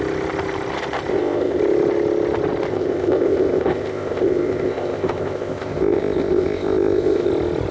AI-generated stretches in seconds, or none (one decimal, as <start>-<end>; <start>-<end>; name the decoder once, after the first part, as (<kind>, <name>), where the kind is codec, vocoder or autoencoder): 1.1-1.6 (codec, ZipCodec); 2.7-7.3